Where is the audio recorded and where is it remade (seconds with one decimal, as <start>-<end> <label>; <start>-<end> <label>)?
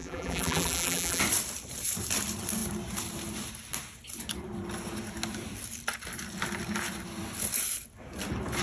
0.0-1.2 remade; 1.2-8.6 recorded